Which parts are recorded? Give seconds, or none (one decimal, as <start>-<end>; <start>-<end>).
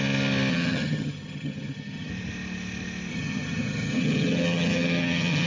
0.0-0.5; 2.1-3.1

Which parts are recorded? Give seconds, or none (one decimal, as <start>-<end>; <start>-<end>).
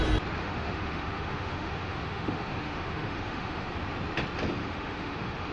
0.0-0.4; 3.7-4.6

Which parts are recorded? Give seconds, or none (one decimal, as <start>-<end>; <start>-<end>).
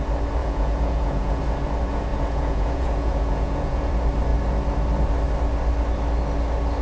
0.0-0.4; 1.4-2.1; 3.9-6.8